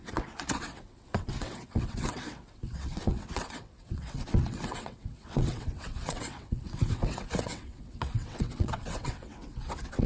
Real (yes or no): no